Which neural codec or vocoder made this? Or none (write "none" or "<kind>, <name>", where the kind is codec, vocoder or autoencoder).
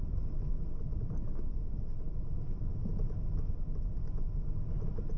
none